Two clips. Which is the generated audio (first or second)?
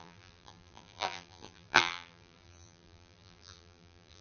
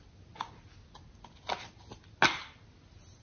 first